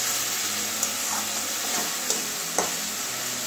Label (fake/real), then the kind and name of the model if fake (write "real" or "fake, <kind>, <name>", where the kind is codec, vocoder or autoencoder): real